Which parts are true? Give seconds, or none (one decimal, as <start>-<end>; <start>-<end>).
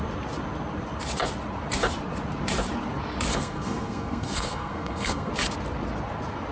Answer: 0.0-3.3; 5.3-6.5